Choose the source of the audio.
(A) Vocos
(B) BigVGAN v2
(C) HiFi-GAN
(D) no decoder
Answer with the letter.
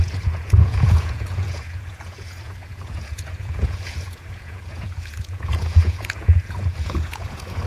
A